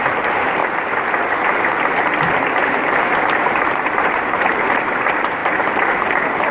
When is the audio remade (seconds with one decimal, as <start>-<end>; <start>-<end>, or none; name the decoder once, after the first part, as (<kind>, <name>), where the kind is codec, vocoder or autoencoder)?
0.0-0.6 (vocoder, BigVGAN v2); 2.7-6.5